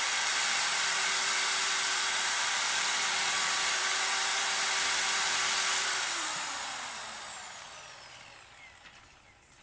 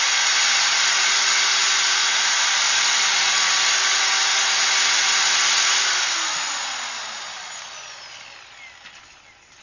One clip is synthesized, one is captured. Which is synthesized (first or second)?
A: first